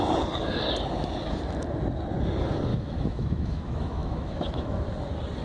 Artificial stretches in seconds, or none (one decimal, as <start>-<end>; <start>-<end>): 2.7-4.8